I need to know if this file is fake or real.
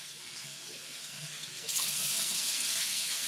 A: fake